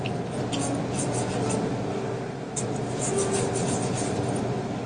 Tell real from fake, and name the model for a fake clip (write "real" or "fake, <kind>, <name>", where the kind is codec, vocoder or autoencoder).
real